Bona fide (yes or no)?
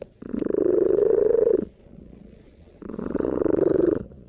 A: no